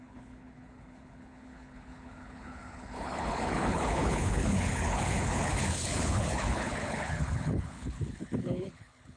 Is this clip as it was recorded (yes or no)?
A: no